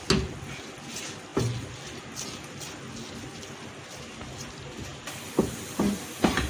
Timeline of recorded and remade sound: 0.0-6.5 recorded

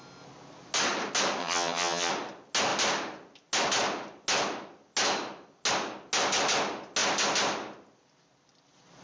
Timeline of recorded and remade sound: 0.0-1.4 recorded; 1.4-2.1 remade; 2.1-9.0 recorded